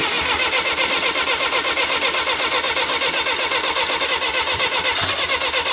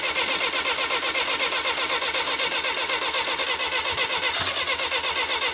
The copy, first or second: first